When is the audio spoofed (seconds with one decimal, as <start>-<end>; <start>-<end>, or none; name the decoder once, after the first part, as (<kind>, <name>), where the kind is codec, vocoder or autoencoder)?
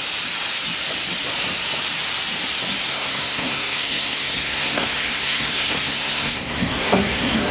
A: 2.9-7.5 (codec, SNAC)